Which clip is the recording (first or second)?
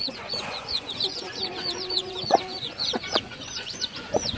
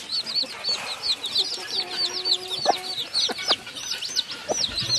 second